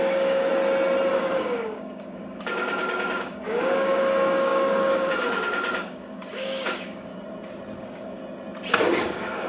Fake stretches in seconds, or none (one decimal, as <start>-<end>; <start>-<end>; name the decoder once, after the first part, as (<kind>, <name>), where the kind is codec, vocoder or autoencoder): 0.0-0.5 (codec, DAC); 1.1-7.1; 7.8-8.2; 8.7-9.5